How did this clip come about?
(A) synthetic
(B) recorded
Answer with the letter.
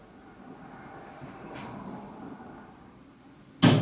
B